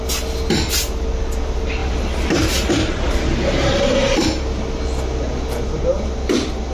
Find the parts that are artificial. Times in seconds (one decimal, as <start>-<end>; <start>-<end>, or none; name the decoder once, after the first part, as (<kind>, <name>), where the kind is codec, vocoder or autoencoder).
none